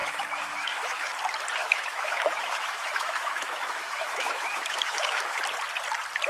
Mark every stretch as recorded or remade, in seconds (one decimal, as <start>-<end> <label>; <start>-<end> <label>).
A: 0.0-1.1 remade; 1.1-1.6 recorded; 1.6-5.4 remade; 5.4-6.3 recorded